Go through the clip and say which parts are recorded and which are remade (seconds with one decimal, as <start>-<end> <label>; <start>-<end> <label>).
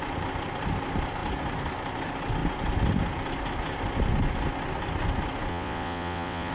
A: 0.0-5.5 recorded; 5.5-6.5 remade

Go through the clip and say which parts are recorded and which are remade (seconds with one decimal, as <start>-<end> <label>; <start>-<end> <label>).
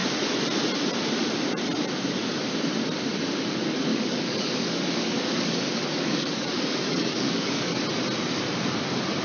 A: 0.0-3.9 recorded; 3.9-7.8 remade; 7.8-9.2 recorded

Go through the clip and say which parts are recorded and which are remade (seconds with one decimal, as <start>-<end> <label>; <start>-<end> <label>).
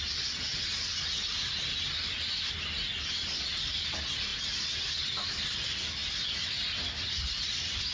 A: 0.0-1.3 remade; 1.3-3.6 recorded; 3.6-4.3 remade; 4.3-5.0 recorded; 5.0-6.0 remade; 6.0-7.2 recorded; 7.2-7.9 remade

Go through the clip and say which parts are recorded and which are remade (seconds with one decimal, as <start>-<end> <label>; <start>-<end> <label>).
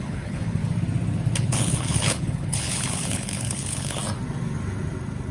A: 0.0-0.6 remade; 0.6-1.4 recorded; 1.4-4.0 remade; 4.0-5.3 recorded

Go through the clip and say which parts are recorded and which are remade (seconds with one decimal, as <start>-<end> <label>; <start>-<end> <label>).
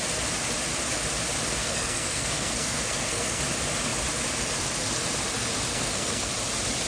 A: 0.0-1.6 recorded; 1.6-3.4 remade; 3.4-5.7 recorded; 5.7-6.3 remade; 6.3-6.9 recorded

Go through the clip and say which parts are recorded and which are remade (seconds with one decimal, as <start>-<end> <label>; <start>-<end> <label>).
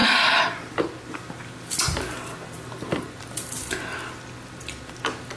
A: 0.0-5.4 recorded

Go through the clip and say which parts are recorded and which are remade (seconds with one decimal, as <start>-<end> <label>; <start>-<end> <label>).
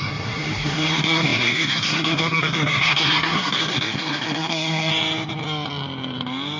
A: 0.0-4.9 remade; 4.9-6.6 recorded